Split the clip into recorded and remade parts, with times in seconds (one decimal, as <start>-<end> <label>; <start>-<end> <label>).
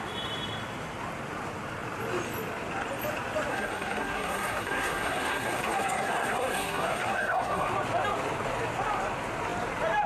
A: 0.0-3.5 recorded; 3.5-7.7 remade; 7.7-10.1 recorded